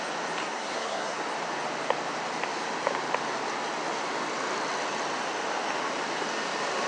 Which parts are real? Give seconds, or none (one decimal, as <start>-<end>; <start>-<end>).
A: 0.0-0.4; 1.2-6.9